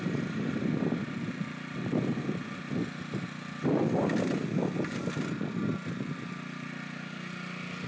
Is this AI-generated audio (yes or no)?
no